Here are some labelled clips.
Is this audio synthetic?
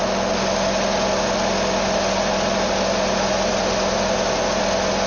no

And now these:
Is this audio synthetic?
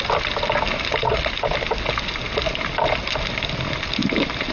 no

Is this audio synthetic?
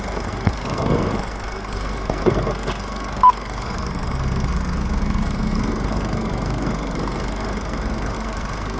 yes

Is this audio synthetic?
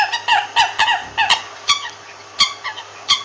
no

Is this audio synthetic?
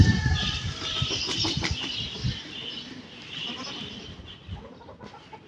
no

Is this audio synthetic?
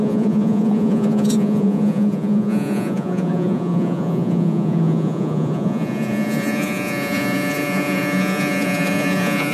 yes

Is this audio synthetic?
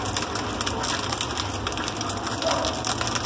no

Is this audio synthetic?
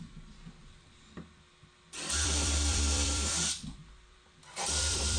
yes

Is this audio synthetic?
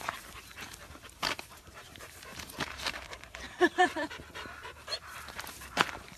yes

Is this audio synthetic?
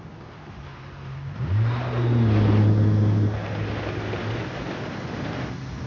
no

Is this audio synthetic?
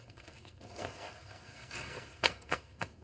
yes